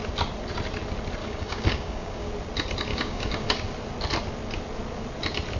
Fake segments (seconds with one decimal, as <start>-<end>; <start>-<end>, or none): 1.2-2.3; 2.9-3.5